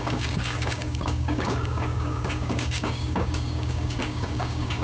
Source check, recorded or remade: remade